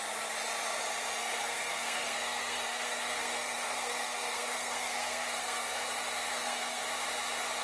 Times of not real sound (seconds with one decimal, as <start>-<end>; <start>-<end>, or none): 1.2-5.8; 6.3-6.8